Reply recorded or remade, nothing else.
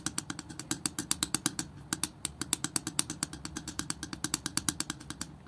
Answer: recorded